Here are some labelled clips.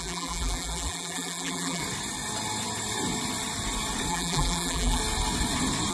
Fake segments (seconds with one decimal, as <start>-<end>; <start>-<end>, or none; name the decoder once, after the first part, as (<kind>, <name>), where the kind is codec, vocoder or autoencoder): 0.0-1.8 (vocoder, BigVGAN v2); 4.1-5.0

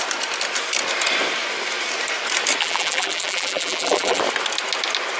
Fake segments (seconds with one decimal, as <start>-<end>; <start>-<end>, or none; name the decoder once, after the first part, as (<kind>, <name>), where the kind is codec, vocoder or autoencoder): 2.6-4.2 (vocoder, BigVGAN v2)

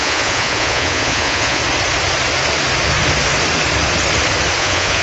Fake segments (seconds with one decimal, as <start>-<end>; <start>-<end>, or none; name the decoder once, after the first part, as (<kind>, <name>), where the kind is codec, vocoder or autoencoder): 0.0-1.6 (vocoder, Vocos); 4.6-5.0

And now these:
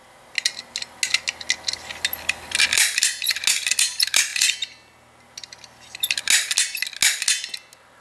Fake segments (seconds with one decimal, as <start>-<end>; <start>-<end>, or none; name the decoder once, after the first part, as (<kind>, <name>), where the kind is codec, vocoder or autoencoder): none

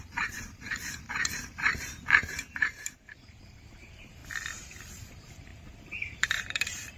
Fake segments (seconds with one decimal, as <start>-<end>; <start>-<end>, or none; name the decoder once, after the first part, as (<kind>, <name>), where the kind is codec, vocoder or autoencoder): 0.0-4.2 (vocoder, BigVGAN v2); 4.9-5.5; 6.1-7.0